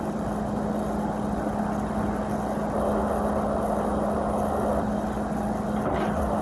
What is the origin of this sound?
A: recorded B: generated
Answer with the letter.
A